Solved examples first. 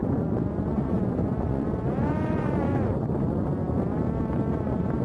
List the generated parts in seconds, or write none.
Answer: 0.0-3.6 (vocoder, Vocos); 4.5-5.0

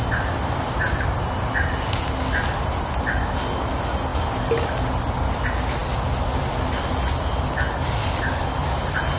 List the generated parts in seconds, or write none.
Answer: none

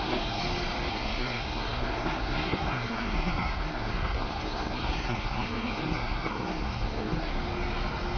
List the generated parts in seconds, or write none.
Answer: 0.0-0.4 (codec, SNAC); 0.9-7.3

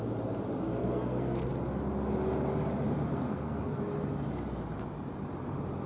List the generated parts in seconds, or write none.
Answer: 0.8-1.5 (codec, SNAC); 3.1-3.8

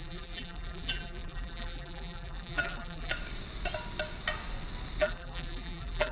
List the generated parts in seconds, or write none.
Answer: 0.0-3.1 (vocoder, BigVGAN v2); 5.0-6.1

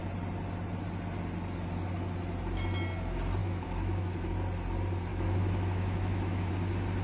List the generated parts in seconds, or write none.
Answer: 3.4-4.3 (autoencoder, DAC-VAE); 5.1-6.5

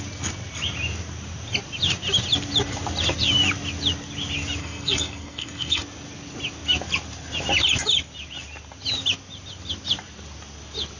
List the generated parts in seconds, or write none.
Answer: 4.6-5.8 (codec, SNAC)

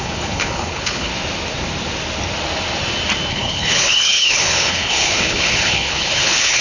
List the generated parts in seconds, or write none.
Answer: 0.0-1.1 (codec, HILCodec); 3.3-6.6